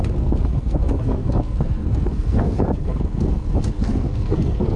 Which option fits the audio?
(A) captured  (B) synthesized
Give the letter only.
B